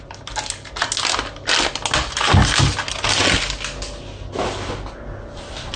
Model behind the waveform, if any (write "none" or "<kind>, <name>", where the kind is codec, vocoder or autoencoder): none